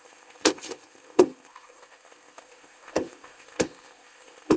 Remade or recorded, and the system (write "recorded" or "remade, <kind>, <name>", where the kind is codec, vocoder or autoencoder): remade, codec, ZipCodec